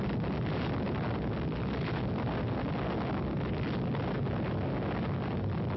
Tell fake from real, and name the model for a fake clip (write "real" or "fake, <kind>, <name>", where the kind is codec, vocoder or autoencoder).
real